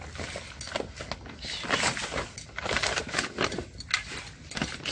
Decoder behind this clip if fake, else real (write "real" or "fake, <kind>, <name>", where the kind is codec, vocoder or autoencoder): real